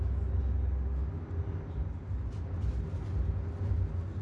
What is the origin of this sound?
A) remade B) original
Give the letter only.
B